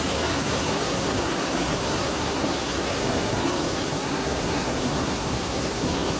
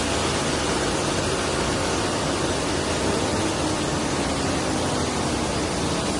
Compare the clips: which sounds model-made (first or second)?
first